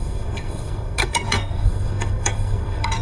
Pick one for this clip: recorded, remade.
remade